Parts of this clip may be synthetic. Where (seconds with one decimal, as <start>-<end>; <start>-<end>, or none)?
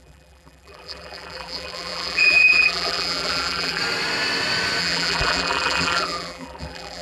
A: 0.0-3.8; 4.8-7.0